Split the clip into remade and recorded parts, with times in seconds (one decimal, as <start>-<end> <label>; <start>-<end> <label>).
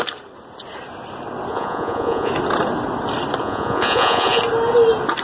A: 0.0-1.5 recorded; 1.5-2.3 remade; 2.3-3.4 recorded; 3.4-4.4 remade; 4.4-5.2 recorded